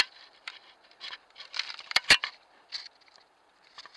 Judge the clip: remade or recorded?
remade